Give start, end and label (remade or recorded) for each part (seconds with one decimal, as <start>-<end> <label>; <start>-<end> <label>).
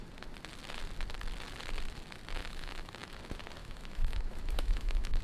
0.0-2.4 recorded; 2.4-3.1 remade; 3.1-3.6 recorded; 3.6-5.2 remade